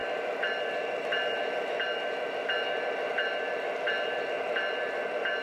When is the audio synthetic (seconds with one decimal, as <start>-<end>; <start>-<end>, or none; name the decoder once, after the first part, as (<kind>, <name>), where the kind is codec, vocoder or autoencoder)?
none